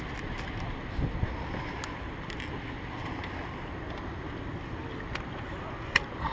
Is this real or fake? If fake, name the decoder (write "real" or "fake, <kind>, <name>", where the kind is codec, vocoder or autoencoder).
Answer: real